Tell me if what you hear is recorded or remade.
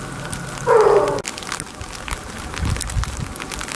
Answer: recorded